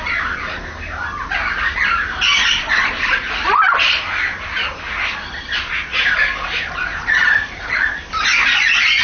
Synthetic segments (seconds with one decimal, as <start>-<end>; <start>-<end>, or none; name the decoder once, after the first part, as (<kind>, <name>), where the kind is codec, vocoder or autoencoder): 2.3-4.0 (vocoder, BigVGAN v2); 5.9-8.2